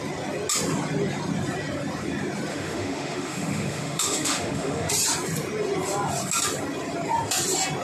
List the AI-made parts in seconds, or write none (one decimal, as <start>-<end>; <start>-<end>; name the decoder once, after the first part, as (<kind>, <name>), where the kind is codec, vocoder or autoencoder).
2.5-4.9 (autoencoder, DAC-VAE)